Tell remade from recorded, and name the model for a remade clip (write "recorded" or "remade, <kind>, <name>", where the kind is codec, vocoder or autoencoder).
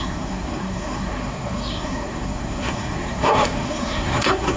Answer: remade, codec, SNAC